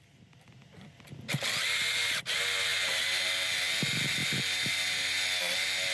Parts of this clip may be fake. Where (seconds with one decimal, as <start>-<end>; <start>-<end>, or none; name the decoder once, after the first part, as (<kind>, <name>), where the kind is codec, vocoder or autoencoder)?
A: none